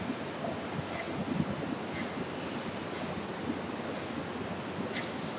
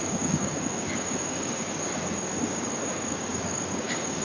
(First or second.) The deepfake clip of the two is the second